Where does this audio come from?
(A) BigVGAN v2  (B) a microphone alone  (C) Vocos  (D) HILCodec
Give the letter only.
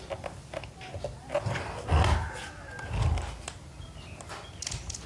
B